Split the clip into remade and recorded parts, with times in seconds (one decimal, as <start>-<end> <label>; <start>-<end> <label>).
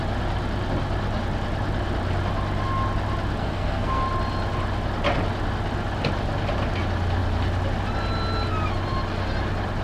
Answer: 0.0-3.4 recorded; 3.4-4.0 remade; 4.0-9.8 recorded